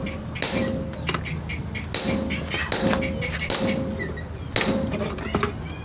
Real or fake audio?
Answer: real